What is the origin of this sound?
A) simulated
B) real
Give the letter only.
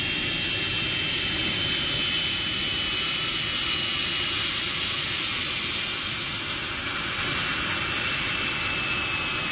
B